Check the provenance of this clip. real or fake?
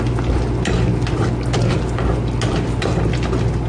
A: real